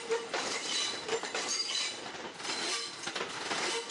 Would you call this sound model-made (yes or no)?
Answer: no